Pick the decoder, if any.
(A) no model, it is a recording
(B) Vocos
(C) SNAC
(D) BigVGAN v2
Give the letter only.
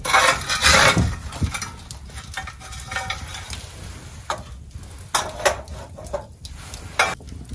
A